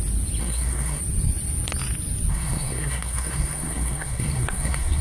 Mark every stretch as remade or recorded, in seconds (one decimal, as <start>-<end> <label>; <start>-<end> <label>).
0.0-0.4 recorded; 0.4-1.0 remade; 1.0-2.3 recorded; 2.3-5.0 remade